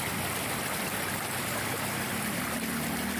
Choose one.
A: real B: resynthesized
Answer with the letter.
A